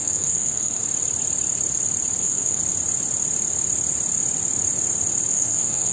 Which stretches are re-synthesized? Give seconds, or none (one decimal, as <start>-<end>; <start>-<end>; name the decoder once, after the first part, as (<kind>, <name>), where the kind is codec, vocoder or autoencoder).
0.0-0.8 (codec, SNAC); 2.2-2.6; 5.3-5.9